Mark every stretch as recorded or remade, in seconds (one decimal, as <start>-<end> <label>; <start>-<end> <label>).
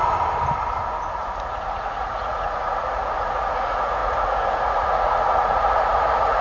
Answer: 0.0-1.7 recorded; 1.7-6.4 remade